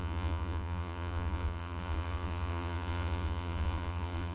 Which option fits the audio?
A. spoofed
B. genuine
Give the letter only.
A